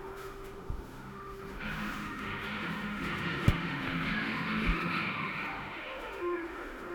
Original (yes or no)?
no